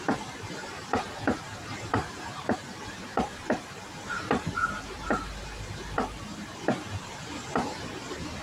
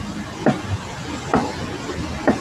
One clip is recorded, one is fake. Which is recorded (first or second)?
second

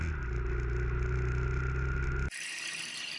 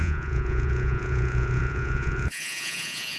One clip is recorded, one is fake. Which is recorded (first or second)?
first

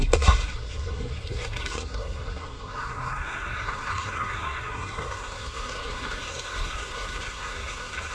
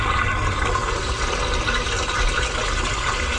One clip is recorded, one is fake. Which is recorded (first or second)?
second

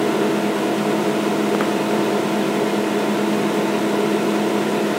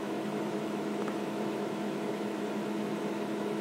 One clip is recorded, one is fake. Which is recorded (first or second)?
first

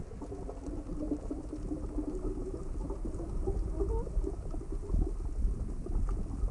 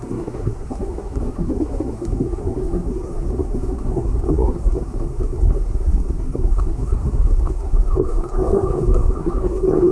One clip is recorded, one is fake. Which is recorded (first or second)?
first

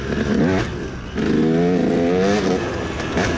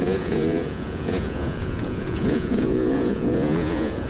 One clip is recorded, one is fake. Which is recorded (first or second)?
first